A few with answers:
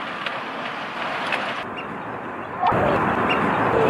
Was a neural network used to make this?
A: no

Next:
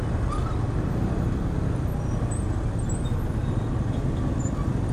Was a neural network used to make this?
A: no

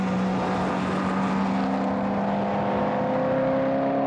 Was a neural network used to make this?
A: no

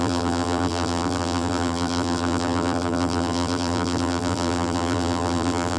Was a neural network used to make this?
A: yes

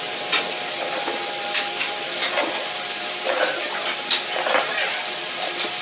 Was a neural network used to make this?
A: yes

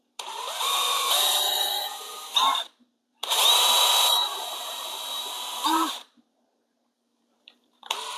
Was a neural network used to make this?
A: yes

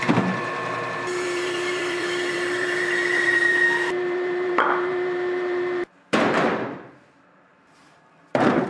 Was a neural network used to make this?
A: yes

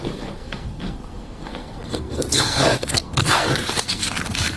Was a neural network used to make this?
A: yes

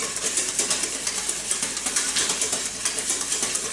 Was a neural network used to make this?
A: yes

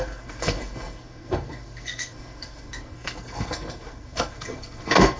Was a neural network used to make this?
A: yes